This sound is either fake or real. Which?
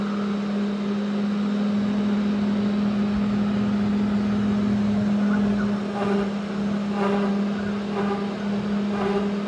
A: real